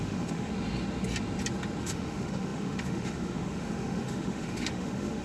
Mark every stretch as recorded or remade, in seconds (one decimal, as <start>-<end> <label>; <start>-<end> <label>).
0.0-0.5 remade; 0.5-1.8 recorded; 1.8-5.2 remade